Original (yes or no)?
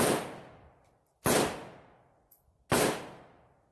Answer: yes